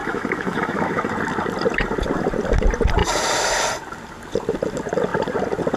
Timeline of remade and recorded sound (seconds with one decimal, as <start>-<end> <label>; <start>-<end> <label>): 0.0-1.1 remade; 1.1-5.8 recorded